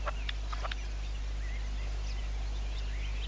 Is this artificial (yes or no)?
no